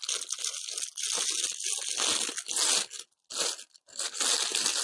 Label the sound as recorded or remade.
recorded